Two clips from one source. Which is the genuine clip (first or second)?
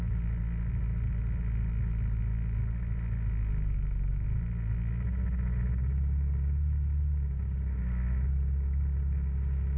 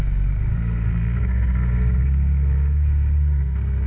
first